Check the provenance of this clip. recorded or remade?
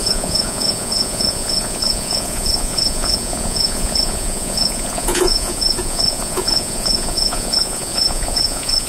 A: remade